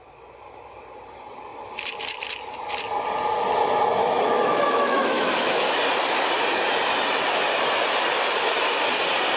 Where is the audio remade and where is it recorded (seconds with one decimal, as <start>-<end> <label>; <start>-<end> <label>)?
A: 0.0-4.0 recorded; 4.0-5.8 remade; 5.8-9.4 recorded